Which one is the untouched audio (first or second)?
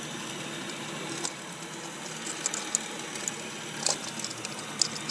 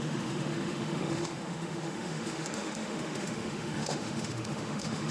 first